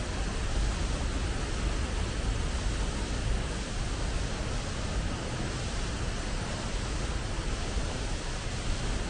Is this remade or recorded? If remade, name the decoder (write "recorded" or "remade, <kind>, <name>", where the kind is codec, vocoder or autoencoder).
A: recorded